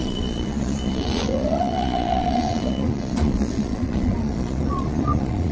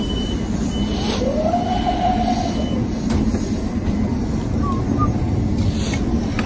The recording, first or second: second